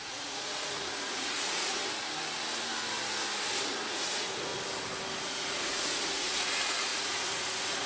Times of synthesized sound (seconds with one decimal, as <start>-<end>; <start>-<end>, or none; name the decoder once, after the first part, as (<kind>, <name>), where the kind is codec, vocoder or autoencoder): 0.0-1.8 (vocoder, Vocos); 3.7-4.5; 5.2-7.9